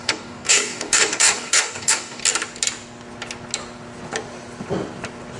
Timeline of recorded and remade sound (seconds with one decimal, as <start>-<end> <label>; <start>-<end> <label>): 0.0-2.2 remade; 2.2-5.4 recorded